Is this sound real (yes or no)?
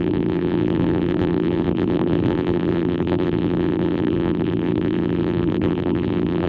no